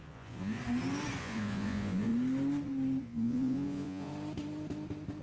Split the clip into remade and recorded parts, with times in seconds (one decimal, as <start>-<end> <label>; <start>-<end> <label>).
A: 0.0-0.6 remade; 0.6-1.2 recorded; 1.2-2.1 remade; 2.1-3.0 recorded; 3.0-4.1 remade; 4.1-5.2 recorded